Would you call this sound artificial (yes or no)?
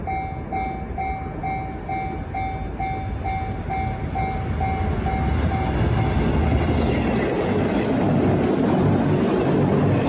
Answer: no